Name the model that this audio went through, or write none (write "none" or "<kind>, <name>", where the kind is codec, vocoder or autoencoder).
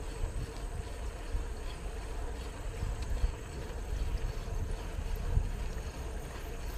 none